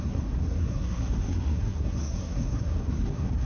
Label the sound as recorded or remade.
remade